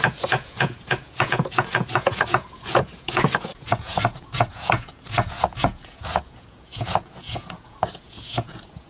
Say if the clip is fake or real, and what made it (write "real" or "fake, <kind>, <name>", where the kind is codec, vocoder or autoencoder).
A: fake, vocoder, Vocos